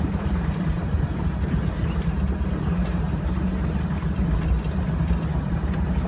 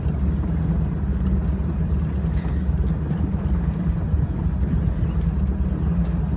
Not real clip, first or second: first